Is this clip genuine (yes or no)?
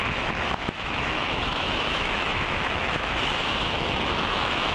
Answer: no